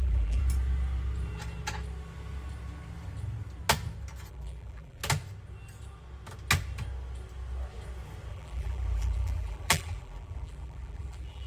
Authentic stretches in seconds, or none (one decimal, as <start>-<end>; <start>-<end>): 0.4-4.3; 5.0-8.3